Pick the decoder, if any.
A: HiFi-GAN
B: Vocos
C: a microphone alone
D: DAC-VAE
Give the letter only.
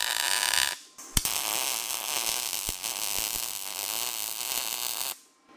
C